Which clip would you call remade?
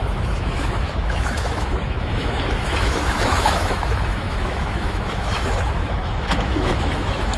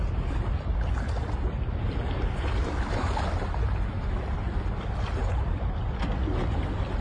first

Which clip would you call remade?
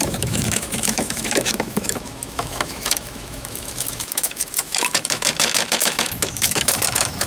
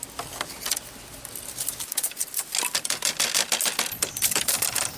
first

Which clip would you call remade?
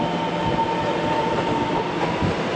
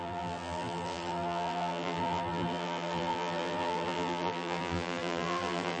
second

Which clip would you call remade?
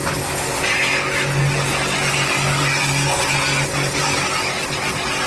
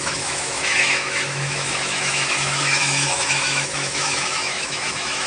second